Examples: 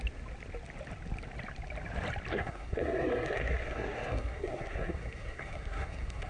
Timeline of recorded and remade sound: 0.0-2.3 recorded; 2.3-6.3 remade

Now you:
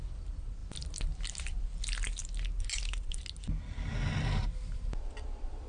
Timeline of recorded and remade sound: 0.0-4.4 recorded; 4.4-5.1 remade; 5.1-5.7 recorded

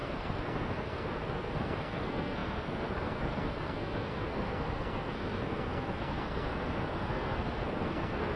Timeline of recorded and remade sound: 0.0-8.4 remade

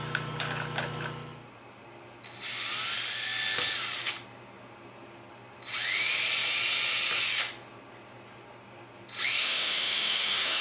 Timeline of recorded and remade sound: 0.0-9.4 recorded; 9.4-10.6 remade

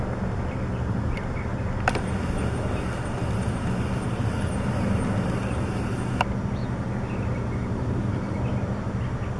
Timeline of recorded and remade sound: 0.0-5.4 recorded; 5.4-6.1 remade; 6.1-6.6 recorded; 6.6-8.4 remade; 8.4-9.4 recorded

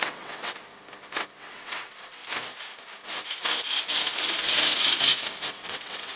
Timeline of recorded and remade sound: 0.0-0.6 remade; 0.6-1.3 recorded; 1.3-2.2 remade; 2.2-5.5 recorded; 5.5-6.2 remade

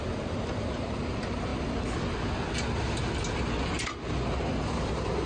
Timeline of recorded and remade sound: 0.0-5.3 recorded